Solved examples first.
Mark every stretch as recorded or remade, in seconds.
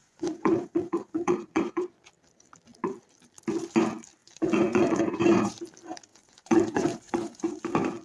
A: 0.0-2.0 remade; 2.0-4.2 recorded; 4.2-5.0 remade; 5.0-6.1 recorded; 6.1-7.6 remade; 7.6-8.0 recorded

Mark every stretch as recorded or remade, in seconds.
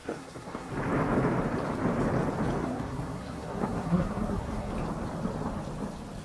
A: 0.0-0.7 remade; 0.7-2.6 recorded; 2.6-4.7 remade; 4.7-6.2 recorded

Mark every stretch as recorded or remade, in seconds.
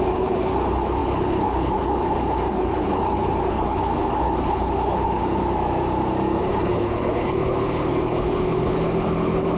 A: 0.0-5.2 remade; 5.2-6.4 recorded; 6.4-9.6 remade